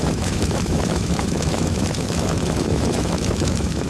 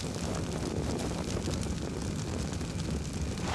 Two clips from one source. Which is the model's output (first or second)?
first